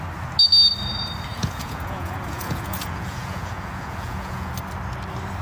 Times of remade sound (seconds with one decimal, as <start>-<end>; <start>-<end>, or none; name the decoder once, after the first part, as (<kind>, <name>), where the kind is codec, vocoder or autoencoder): 1.3-4.5 (vocoder, Vocos)